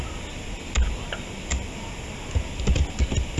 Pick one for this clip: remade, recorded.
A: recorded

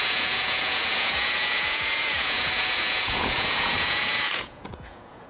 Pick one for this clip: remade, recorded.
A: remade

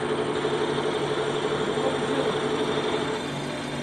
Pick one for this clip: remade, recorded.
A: recorded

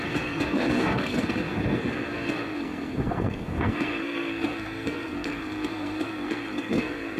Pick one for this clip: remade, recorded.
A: remade